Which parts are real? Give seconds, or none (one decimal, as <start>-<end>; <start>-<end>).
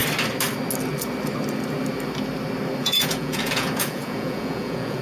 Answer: 0.0-2.8